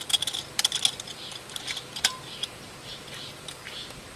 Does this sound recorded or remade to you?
recorded